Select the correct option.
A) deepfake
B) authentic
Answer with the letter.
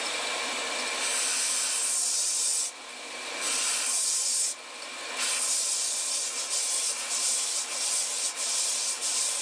B